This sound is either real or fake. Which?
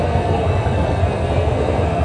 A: fake